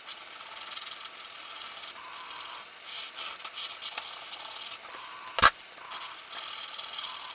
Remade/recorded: remade